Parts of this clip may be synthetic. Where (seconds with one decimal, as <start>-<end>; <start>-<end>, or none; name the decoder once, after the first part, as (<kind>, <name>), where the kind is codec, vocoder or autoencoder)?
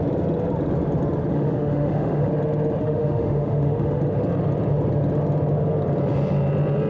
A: 1.3-2.3 (autoencoder, DAC-VAE); 2.8-4.0